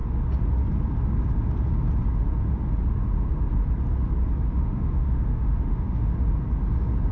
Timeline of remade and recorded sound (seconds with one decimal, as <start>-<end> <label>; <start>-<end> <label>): 0.0-4.5 recorded; 4.5-6.1 remade; 6.1-7.1 recorded